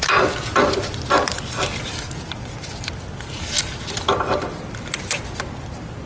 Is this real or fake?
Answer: real